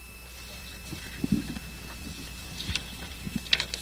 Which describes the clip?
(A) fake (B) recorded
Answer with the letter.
A